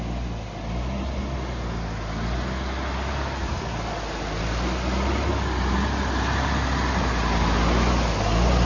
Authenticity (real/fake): real